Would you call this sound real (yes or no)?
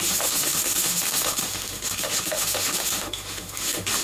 no